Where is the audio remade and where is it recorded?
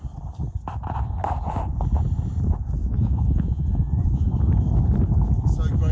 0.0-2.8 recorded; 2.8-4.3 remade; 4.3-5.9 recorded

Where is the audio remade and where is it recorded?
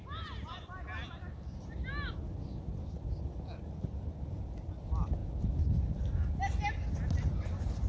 0.0-7.9 recorded